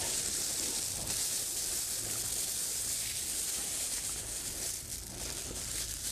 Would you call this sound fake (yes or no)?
no